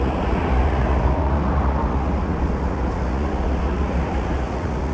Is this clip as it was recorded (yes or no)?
no